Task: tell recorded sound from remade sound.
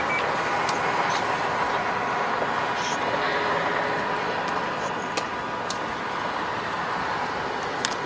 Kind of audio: recorded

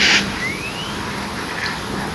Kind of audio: recorded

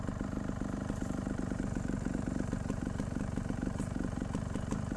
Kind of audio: remade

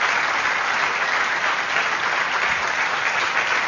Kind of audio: recorded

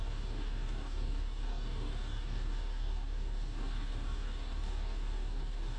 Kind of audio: remade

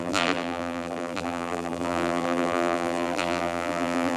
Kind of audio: remade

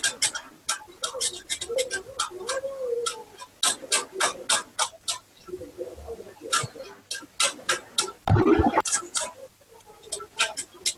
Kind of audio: recorded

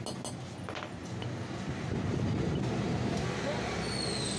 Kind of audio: recorded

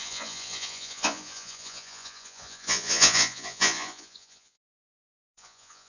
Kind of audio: remade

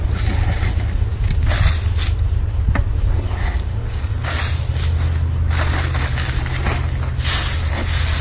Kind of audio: recorded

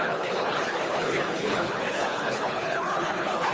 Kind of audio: remade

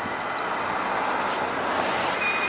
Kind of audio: recorded